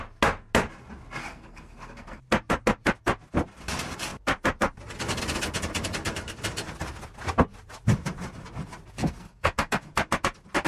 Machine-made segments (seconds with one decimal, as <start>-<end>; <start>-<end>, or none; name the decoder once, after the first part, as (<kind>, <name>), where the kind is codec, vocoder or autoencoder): 1.2-2.2 (codec, SNAC); 9.0-9.9